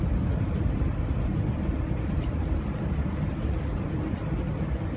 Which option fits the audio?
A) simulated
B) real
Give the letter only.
B